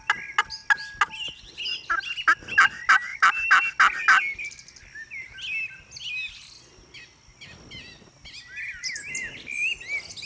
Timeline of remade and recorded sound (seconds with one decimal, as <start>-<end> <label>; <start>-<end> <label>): 0.0-10.3 recorded